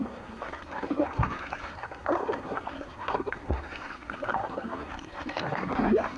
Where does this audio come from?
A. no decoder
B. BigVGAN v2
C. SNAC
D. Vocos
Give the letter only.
C